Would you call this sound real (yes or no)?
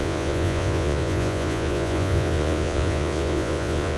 no